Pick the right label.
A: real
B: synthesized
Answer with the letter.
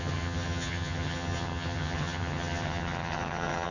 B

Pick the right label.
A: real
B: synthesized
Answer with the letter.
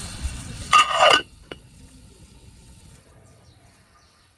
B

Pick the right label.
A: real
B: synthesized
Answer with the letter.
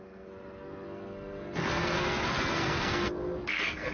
B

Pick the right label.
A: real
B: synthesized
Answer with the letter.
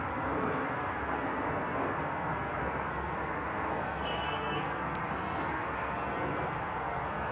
B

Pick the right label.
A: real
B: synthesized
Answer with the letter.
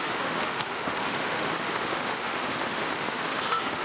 B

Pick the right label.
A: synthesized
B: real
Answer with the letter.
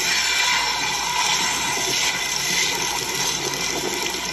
B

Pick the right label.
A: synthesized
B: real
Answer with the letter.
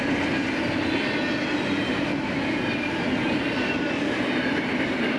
B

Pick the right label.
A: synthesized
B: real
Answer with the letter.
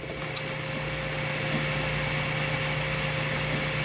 B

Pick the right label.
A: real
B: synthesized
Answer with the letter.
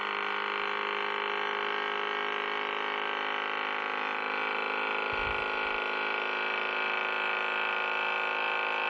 A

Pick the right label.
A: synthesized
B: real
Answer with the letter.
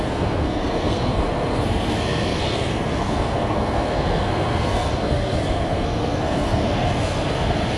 A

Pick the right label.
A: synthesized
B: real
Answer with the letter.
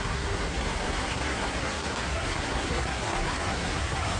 A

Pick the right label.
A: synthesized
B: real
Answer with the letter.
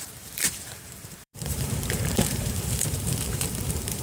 A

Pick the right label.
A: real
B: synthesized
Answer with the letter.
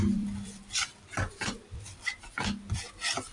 B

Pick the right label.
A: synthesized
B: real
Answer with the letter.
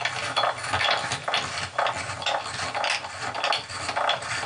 B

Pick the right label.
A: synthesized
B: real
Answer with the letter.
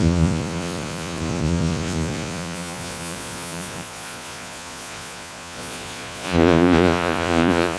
A